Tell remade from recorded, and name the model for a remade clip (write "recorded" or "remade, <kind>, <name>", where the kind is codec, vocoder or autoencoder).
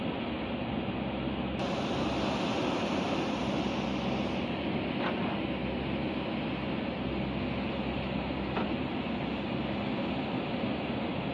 recorded